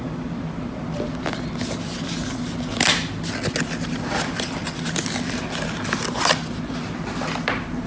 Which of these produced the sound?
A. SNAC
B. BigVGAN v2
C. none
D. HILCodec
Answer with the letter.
C